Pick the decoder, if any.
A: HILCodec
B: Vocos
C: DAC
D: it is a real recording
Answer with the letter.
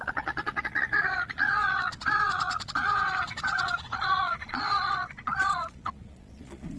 B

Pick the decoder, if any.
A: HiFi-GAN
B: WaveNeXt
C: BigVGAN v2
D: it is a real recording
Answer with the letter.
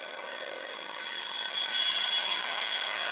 A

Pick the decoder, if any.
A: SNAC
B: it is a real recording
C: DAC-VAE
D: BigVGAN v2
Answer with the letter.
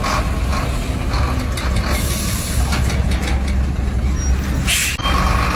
B